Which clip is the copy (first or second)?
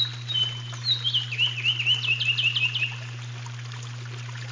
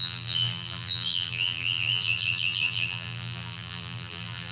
second